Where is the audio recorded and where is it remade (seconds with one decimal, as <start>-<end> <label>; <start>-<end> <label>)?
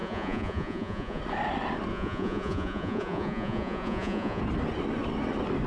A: 0.0-1.2 remade; 1.2-1.9 recorded; 1.9-4.4 remade; 4.4-5.7 recorded